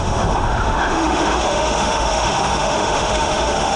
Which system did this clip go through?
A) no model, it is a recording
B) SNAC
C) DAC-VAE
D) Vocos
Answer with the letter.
C